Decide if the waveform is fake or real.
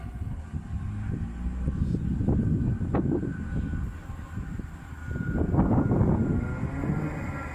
real